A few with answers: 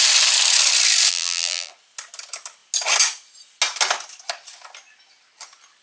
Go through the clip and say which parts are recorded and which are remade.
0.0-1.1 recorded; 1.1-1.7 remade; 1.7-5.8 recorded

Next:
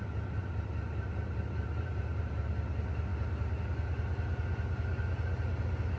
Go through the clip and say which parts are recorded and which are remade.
0.0-0.4 recorded; 0.4-2.5 remade; 2.5-6.0 recorded